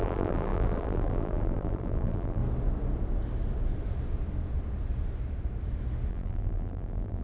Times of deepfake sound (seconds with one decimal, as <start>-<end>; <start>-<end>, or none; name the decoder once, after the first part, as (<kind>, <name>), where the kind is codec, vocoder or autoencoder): 0.0-2.4 (vocoder, BigVGAN v2); 6.1-7.2